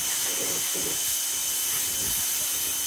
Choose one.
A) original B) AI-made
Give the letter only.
A